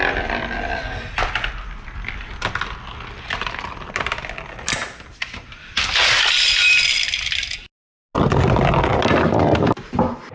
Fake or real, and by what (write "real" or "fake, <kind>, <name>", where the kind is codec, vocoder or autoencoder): real